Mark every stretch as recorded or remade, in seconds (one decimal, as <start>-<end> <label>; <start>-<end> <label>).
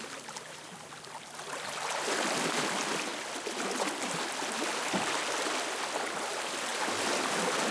0.0-7.7 recorded